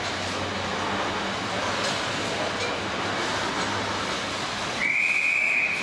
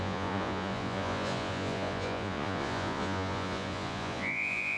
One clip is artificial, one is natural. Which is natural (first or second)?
first